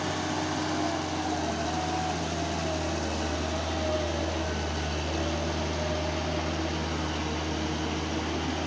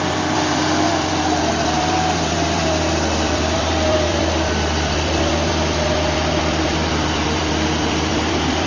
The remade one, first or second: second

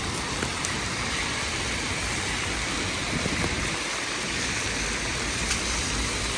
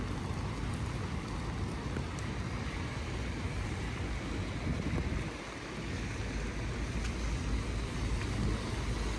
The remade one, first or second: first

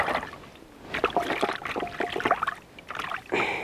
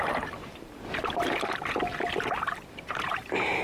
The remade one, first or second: second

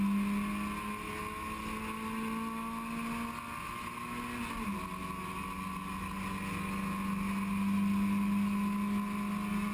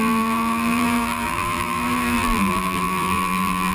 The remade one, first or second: second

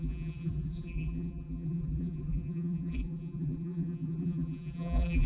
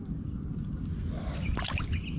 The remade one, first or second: first